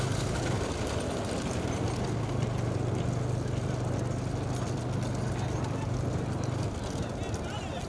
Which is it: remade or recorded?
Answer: recorded